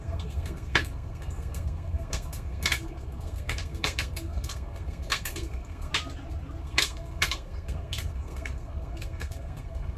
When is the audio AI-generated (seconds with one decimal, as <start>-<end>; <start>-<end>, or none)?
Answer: 0.0-5.9; 6.6-10.0